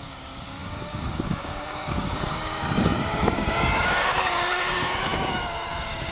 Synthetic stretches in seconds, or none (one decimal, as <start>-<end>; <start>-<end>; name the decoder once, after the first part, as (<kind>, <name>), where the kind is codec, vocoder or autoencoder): 0.0-6.1 (codec, DAC)

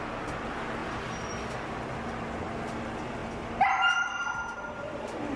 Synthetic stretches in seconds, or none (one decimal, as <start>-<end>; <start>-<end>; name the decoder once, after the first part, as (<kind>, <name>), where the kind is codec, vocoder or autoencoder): none

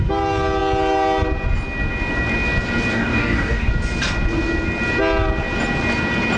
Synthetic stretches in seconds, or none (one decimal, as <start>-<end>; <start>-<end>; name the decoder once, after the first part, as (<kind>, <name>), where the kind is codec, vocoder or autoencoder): 2.9-3.7 (codec, DAC)